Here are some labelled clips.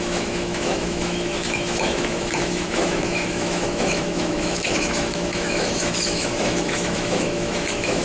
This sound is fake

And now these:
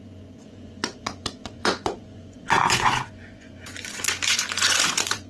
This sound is fake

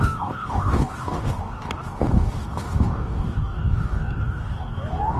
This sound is fake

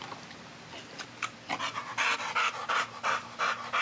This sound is real